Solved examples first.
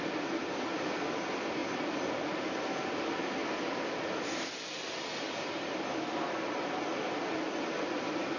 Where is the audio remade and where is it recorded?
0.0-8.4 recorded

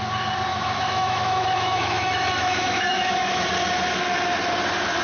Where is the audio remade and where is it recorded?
0.0-0.5 recorded; 0.5-3.5 remade; 3.5-5.0 recorded

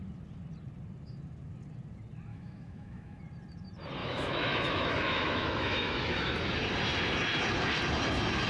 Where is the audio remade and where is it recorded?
0.0-2.3 recorded; 2.3-3.2 remade; 3.2-4.0 recorded; 4.0-6.3 remade; 6.3-8.5 recorded

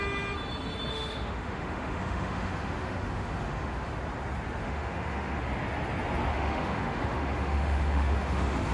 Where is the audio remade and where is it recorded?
0.0-0.9 recorded; 0.9-3.9 remade; 3.9-4.6 recorded; 4.6-5.4 remade; 5.4-6.3 recorded; 6.3-8.7 remade

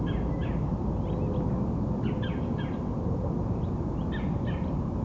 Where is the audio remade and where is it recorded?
0.0-5.0 recorded

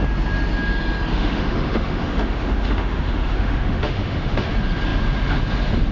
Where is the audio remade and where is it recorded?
0.0-1.1 recorded; 1.1-4.5 remade; 4.5-5.9 recorded

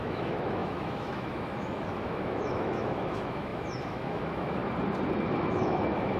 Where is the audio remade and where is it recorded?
0.0-4.6 remade; 4.6-5.1 recorded; 5.1-6.2 remade

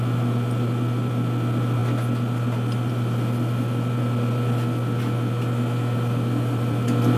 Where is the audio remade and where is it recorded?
0.0-7.2 recorded